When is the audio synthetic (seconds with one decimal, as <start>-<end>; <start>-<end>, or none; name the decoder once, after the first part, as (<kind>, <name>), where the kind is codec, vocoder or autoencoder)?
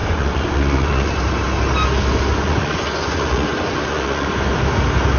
0.0-1.2 (vocoder, Vocos); 2.3-4.3